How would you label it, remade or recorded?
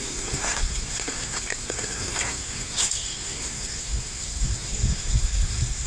remade